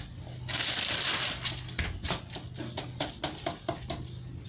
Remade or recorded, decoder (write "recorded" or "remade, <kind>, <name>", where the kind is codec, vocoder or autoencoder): recorded